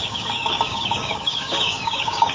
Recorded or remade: remade